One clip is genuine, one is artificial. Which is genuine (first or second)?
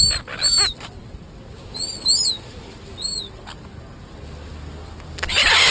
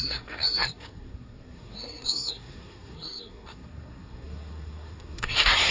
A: first